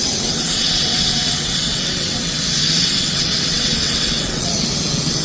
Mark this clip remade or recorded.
remade